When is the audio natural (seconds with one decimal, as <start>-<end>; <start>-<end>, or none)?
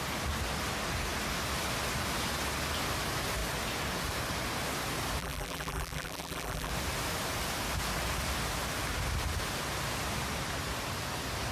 0.0-5.2; 6.7-11.5